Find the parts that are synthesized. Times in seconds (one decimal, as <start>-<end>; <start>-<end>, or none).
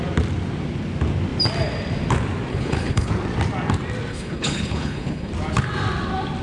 2.5-3.1; 4.1-5.3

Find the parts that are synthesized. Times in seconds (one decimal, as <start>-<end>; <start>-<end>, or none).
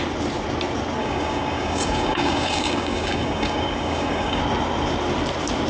1.0-4.4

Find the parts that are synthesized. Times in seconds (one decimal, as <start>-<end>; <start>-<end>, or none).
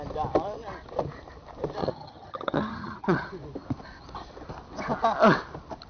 1.8-3.3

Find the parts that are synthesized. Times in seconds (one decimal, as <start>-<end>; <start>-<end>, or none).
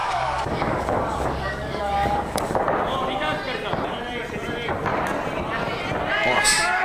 0.0-2.6